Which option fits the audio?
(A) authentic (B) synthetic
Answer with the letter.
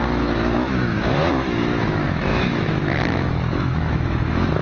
B